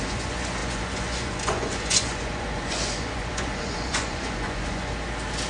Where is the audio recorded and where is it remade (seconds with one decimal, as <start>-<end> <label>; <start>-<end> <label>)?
0.0-4.9 remade; 4.9-5.5 recorded